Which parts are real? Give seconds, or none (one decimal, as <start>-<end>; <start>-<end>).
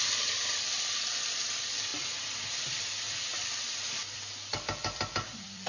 1.9-2.6; 4.0-4.5